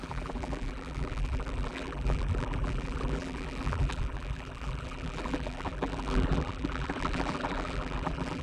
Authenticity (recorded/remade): remade